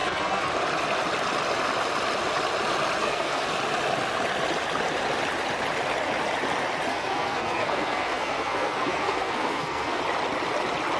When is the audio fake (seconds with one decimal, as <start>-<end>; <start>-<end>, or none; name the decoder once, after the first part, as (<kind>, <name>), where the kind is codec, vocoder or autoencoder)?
0.0-0.5 (codec, SNAC); 3.0-3.6; 6.9-10.0

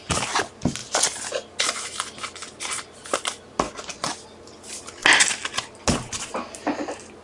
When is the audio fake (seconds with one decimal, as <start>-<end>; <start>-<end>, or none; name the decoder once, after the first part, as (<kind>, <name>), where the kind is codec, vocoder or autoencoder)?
none

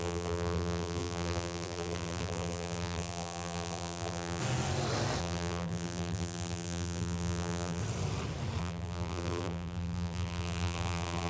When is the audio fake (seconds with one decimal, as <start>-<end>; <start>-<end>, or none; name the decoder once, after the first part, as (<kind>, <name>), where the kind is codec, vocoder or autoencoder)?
0.0-4.4 (vocoder, BigVGAN v2); 5.2-7.8; 8.6-11.3

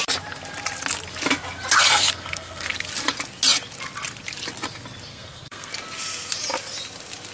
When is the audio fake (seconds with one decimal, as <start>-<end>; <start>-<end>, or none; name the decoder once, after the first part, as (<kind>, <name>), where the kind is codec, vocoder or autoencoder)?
1.8-2.7 (codec, SNAC); 5.1-5.7

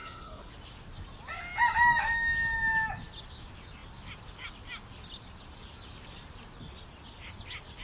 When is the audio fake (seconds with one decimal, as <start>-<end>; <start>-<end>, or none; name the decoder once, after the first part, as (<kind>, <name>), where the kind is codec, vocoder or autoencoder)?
0.0-0.5 (codec, HILCodec)

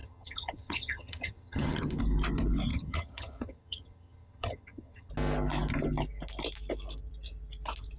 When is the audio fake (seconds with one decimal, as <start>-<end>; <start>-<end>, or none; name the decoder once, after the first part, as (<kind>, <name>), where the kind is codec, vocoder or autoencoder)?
0.0-2.0 (vocoder, HiFi-GAN); 2.7-5.1